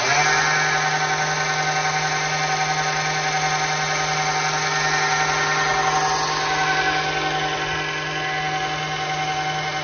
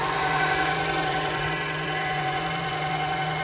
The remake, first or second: second